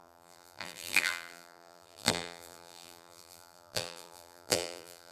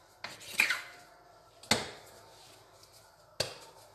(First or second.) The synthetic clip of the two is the first